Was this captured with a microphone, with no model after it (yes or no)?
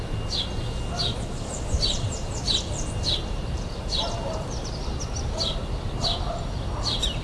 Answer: yes